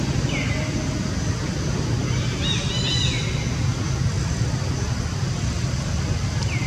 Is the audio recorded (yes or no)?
yes